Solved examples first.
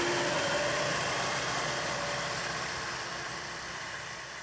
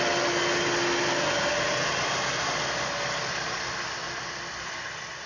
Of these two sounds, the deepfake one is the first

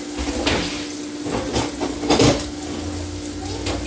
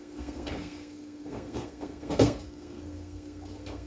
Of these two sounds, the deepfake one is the second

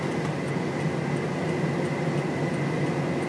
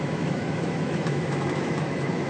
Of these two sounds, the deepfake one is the second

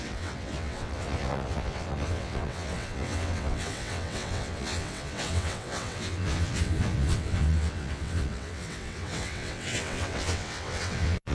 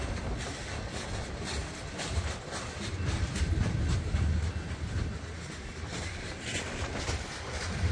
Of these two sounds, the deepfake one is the first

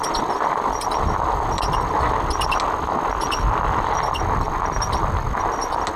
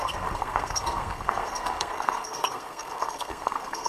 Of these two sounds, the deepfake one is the second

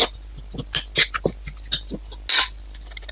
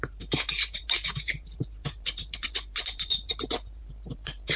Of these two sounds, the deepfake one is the second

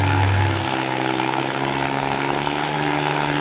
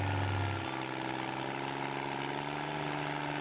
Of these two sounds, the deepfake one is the first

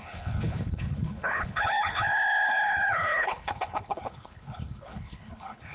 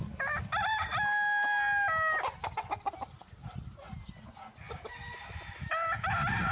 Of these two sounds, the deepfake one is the first